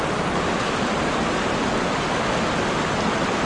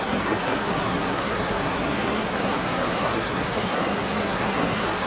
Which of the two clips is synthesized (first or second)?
second